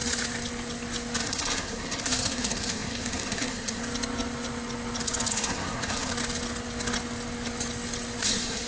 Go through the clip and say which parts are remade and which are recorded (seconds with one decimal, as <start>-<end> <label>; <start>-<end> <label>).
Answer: 0.0-1.2 recorded; 1.2-3.8 remade; 3.8-5.3 recorded; 5.3-6.1 remade; 6.1-8.2 recorded; 8.2-8.7 remade